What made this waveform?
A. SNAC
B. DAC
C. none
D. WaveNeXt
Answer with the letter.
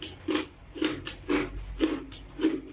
C